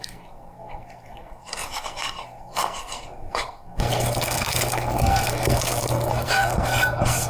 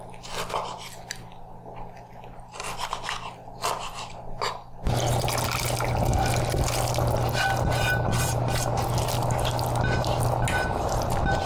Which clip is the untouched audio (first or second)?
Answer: second